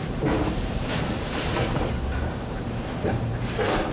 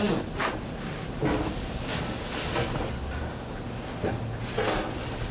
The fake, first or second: first